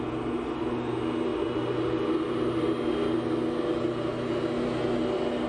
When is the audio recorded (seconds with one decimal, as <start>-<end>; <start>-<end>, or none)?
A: 0.0-5.5